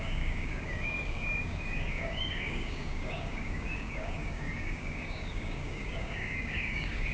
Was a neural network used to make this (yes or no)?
yes